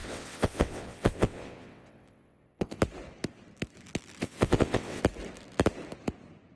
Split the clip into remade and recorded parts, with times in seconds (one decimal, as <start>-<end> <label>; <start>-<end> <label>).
0.0-2.8 remade; 2.8-4.2 recorded; 4.2-5.0 remade; 5.0-6.6 recorded